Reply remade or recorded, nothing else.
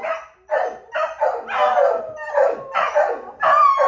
recorded